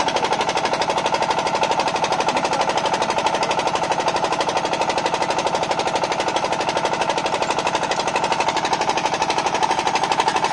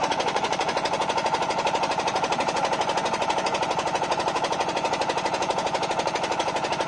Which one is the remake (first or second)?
second